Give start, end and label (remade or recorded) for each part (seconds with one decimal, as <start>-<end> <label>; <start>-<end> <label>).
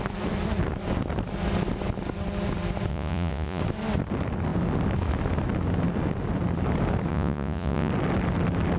0.0-2.9 recorded; 2.9-3.6 remade; 3.6-7.1 recorded; 7.1-7.9 remade; 7.9-8.8 recorded